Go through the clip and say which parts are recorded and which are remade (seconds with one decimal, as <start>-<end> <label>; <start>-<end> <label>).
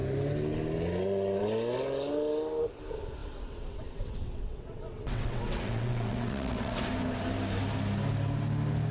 0.0-3.2 recorded; 3.2-6.8 remade; 6.8-8.9 recorded